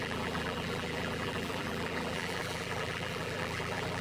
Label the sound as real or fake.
fake